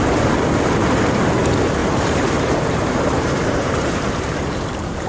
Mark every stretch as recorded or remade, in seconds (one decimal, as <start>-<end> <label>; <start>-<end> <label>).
0.0-1.8 recorded; 1.8-5.1 remade